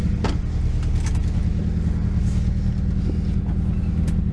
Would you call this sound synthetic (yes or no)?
no